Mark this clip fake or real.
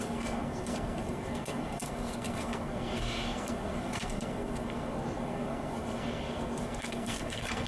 fake